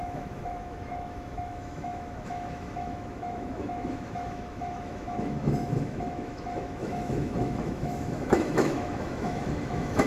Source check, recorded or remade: remade